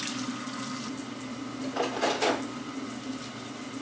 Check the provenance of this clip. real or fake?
real